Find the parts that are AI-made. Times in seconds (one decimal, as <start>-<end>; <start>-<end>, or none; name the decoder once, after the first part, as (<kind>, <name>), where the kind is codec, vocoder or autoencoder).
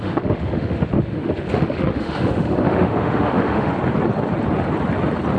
0.0-3.7 (autoencoder, DAC-VAE)